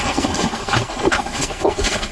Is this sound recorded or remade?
remade